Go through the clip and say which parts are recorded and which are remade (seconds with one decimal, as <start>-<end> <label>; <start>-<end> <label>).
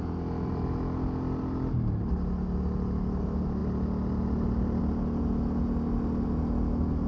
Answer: 0.0-7.1 recorded